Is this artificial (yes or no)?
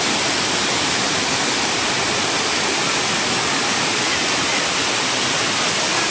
no